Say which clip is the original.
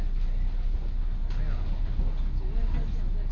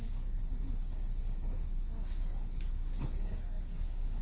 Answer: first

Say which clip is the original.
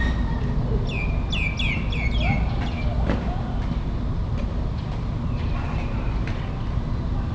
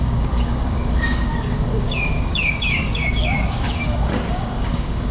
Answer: first